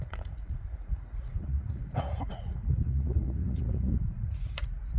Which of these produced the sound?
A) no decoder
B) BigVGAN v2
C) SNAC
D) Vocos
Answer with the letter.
D